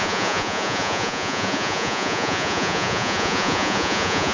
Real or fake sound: fake